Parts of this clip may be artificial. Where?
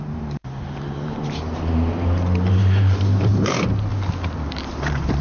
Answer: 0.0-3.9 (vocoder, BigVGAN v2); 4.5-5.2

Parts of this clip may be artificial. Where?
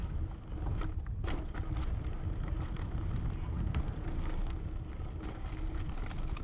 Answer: none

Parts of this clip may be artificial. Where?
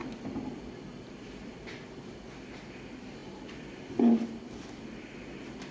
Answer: 0.0-2.2 (vocoder, BigVGAN v2); 3.2-4.8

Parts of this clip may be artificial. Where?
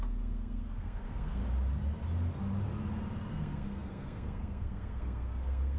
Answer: 0.0-1.4 (codec, SNAC); 3.3-5.8